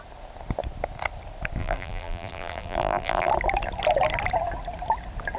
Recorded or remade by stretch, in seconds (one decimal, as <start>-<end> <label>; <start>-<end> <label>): 0.0-1.6 recorded; 1.6-3.3 remade; 3.3-5.4 recorded